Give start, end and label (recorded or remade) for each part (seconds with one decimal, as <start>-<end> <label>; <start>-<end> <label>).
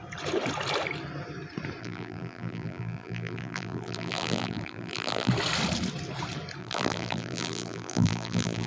0.0-1.8 recorded; 1.8-5.3 remade; 5.3-6.6 recorded; 6.6-8.7 remade